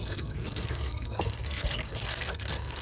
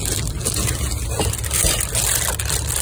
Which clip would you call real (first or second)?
second